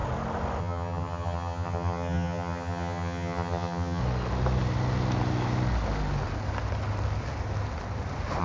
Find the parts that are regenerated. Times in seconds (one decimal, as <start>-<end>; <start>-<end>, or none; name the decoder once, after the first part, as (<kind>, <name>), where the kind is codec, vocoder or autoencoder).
0.6-4.0 (vocoder, HiFi-GAN)